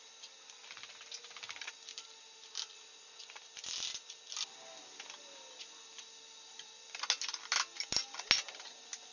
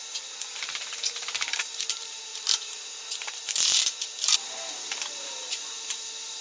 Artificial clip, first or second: second